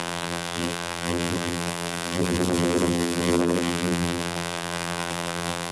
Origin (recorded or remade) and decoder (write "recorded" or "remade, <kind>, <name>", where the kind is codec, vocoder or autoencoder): remade, vocoder, BigVGAN v2